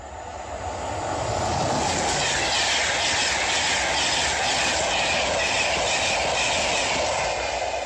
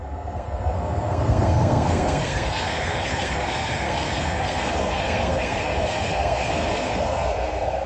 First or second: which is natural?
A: first